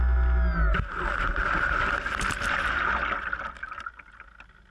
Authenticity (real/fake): real